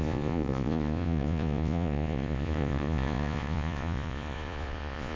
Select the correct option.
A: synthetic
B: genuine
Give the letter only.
A